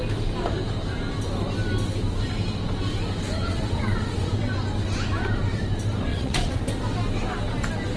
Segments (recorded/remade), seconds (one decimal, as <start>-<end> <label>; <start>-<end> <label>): 0.0-3.4 recorded; 3.4-4.3 remade; 4.3-6.1 recorded; 6.1-6.6 remade; 6.6-8.0 recorded